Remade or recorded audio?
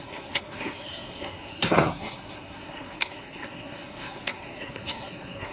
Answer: remade